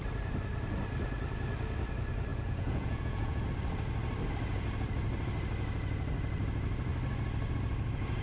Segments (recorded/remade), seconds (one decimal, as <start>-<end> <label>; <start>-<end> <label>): 0.0-2.3 recorded; 2.3-3.4 remade; 3.4-8.2 recorded